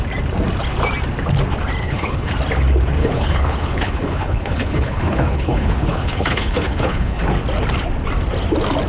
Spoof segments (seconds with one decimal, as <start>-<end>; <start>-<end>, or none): 1.8-2.3; 3.0-7.2